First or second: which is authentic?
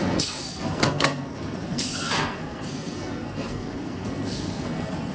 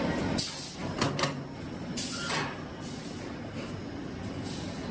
second